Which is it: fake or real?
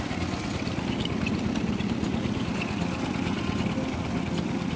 real